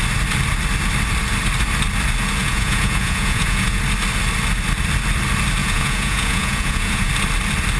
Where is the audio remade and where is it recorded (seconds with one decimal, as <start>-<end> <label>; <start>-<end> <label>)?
0.0-2.4 recorded; 2.4-3.8 remade; 3.8-5.6 recorded; 5.6-7.1 remade; 7.1-7.8 recorded